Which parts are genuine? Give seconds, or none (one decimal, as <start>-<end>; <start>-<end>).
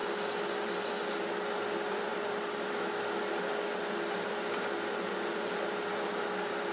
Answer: 0.0-6.7